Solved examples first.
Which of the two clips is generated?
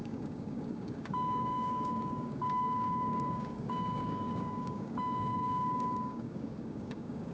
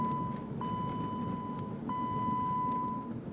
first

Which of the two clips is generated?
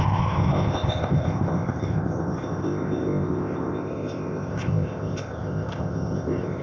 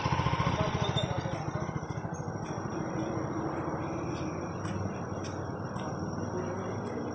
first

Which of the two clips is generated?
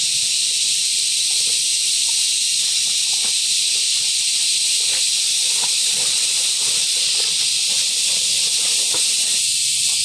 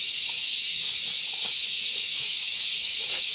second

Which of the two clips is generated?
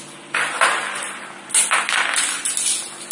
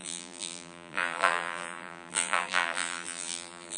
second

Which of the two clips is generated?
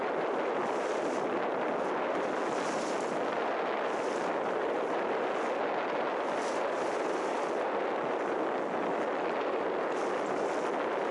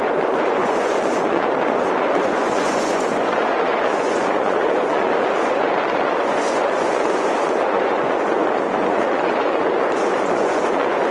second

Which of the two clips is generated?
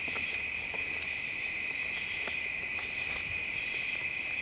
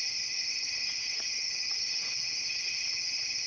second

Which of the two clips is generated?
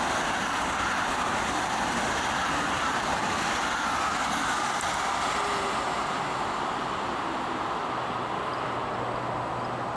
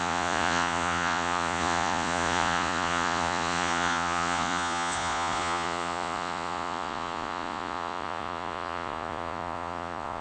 second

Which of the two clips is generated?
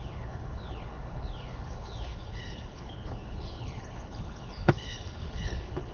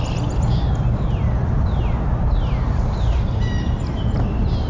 first